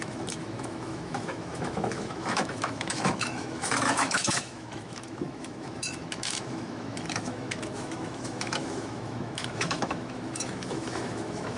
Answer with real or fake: fake